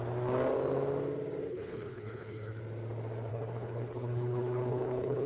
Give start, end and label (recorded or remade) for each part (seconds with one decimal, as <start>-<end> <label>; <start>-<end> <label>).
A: 0.0-1.5 recorded; 1.5-2.6 remade; 2.6-3.3 recorded; 3.3-5.3 remade